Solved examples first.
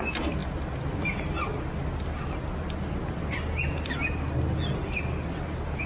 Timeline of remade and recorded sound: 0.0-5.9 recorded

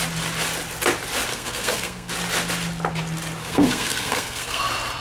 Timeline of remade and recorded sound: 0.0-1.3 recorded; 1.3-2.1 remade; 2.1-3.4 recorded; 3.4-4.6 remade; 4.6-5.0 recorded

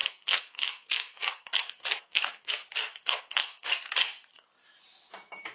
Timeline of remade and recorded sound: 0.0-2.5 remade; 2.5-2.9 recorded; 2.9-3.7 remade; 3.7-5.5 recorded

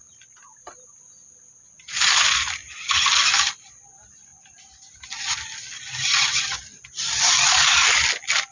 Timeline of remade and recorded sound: 0.0-8.5 recorded

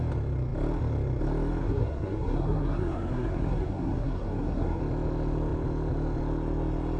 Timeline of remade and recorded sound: 0.0-1.6 recorded; 1.6-4.8 remade; 4.8-7.0 recorded